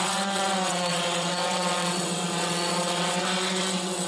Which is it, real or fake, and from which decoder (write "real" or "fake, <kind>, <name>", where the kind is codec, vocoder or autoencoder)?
fake, vocoder, WaveNeXt